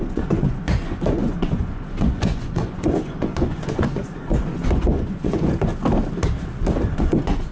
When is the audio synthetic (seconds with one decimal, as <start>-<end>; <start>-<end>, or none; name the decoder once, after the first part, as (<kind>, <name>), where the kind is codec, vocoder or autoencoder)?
0.0-5.7 (vocoder, Vocos); 6.9-7.5